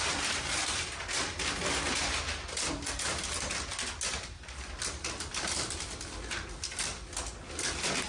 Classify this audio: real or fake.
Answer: real